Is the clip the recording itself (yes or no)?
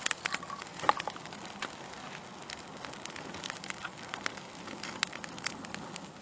yes